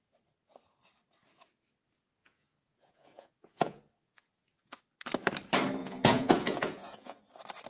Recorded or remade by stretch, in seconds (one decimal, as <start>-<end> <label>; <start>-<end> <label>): 0.0-2.2 recorded; 2.2-4.8 remade; 4.8-5.8 recorded; 5.8-7.2 remade; 7.2-7.7 recorded